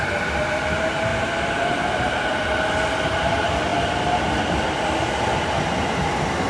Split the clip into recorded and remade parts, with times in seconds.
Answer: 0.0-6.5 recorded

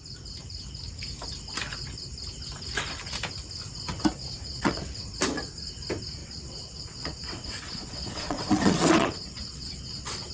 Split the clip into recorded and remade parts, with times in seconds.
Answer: 0.0-4.2 recorded; 4.2-5.1 remade; 5.1-6.2 recorded; 6.2-10.3 remade

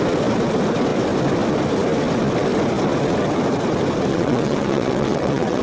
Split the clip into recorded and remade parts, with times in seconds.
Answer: 0.0-4.1 recorded; 4.1-5.6 remade

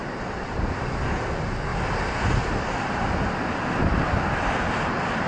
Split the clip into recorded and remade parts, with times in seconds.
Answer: 0.0-5.3 recorded

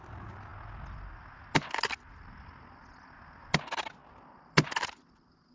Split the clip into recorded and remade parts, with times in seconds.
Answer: 0.0-5.5 recorded

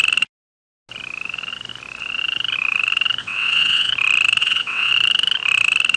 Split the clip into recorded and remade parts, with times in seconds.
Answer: 0.0-3.2 recorded; 3.2-3.9 remade; 3.9-4.4 recorded; 4.4-4.9 remade; 4.9-6.0 recorded